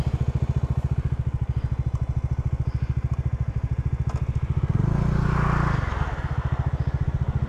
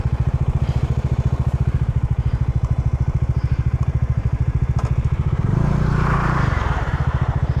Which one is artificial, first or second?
second